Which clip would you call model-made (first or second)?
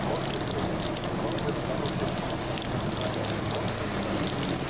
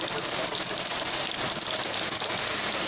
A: second